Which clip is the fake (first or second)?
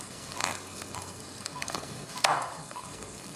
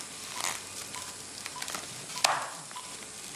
first